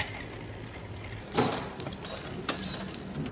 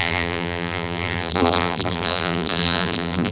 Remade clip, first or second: second